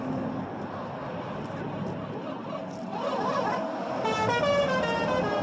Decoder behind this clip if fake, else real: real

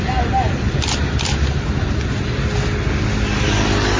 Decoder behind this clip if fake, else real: real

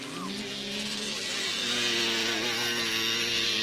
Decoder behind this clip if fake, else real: real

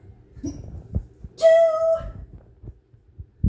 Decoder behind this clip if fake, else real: real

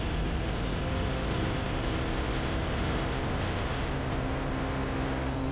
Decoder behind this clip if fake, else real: real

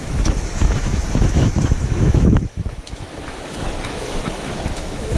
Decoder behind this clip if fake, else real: fake, autoencoder, DAC-VAE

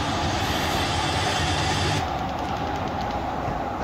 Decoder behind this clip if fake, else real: real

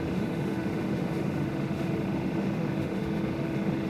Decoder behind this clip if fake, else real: fake, autoencoder, DAC-VAE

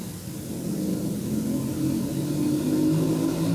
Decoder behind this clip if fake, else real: real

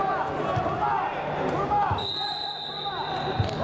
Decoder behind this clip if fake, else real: real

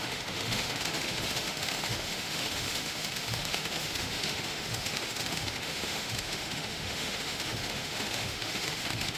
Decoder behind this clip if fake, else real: fake, autoencoder, DAC-VAE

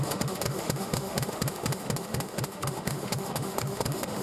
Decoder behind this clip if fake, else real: fake, autoencoder, DAC-VAE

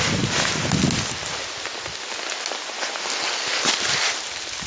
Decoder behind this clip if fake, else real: real